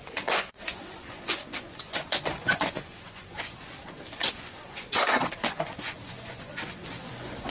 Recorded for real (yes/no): no